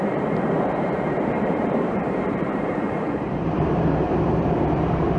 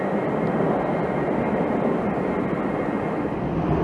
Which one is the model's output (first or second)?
first